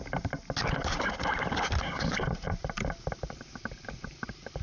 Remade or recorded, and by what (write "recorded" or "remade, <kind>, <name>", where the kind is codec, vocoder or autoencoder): recorded